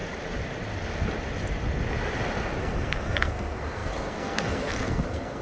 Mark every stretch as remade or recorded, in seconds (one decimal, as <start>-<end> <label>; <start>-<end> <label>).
0.0-2.6 recorded; 2.6-5.4 remade